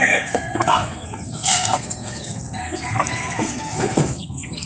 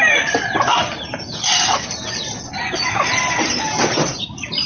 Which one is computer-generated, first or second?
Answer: first